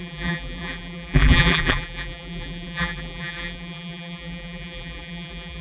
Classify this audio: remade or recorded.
remade